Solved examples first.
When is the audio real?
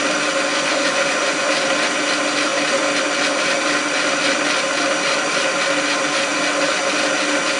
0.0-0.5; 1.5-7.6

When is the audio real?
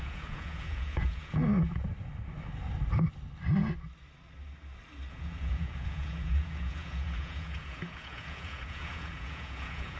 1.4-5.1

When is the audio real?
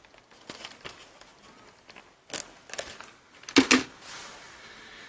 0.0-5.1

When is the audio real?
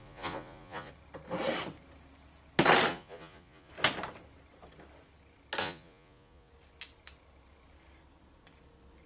0.9-2.9; 3.7-5.6; 6.5-9.1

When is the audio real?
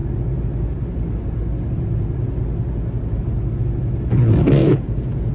0.0-4.6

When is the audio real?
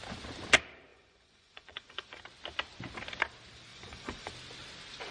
0.0-0.9; 2.2-3.7; 4.3-5.1